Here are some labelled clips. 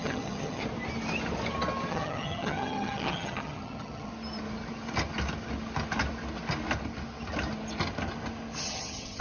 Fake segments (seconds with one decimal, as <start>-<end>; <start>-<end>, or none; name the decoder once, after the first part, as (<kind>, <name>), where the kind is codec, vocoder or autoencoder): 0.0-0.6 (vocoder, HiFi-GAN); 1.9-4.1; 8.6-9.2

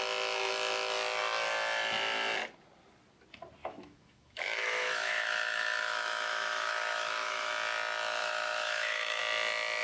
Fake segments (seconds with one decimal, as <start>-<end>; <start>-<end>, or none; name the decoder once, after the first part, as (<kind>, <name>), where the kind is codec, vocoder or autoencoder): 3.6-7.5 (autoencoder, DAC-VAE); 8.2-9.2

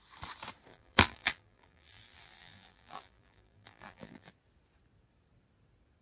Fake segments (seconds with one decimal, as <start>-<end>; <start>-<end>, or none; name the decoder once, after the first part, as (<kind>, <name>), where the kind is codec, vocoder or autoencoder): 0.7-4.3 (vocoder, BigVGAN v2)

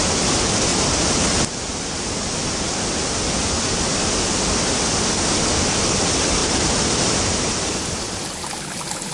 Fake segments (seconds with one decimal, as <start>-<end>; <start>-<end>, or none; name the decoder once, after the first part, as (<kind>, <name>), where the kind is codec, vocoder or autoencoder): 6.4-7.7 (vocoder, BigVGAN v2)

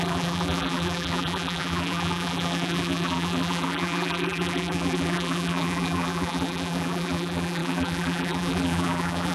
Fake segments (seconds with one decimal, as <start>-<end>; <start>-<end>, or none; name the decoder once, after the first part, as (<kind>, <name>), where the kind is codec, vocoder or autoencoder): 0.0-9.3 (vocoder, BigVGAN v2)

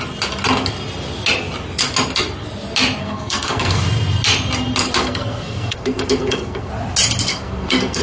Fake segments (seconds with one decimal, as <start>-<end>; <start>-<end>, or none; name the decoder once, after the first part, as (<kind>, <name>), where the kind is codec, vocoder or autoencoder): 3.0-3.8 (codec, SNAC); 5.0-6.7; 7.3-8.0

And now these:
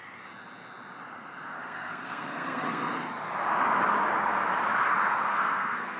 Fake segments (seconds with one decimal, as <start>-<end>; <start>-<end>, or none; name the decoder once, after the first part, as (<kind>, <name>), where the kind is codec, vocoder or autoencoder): 1.5-2.8 (codec, SNAC); 5.3-6.0

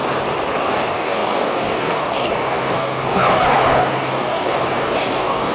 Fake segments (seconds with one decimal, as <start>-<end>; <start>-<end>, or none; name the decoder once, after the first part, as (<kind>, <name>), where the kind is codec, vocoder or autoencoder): 0.6-5.5 (codec, DAC)